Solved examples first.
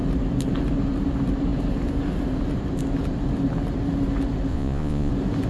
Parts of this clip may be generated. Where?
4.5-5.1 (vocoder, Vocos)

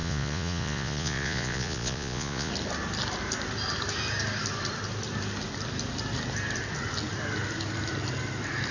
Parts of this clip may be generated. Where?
0.0-2.5 (vocoder, Vocos)

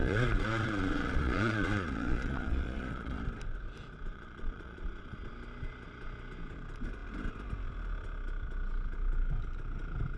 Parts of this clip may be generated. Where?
0.0-3.2 (vocoder, Vocos); 4.1-5.3